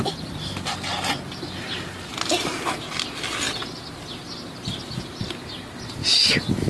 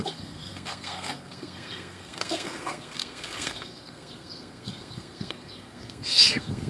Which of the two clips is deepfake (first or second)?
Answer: second